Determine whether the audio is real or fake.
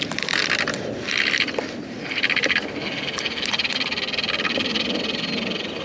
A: real